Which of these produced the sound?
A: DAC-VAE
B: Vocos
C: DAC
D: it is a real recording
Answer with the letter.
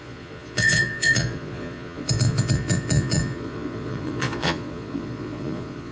B